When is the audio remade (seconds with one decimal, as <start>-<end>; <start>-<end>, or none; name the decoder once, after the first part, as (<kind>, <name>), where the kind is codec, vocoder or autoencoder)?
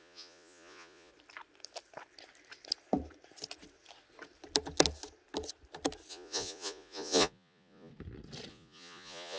0.0-1.1 (vocoder, Vocos); 6.1-7.9; 8.5-9.4